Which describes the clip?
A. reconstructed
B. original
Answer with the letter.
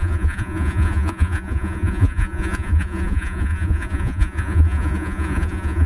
A